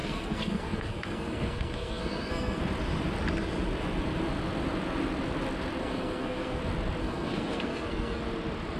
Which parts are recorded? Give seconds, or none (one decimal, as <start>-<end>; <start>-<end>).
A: 2.6-5.8; 6.6-7.0; 8.2-8.8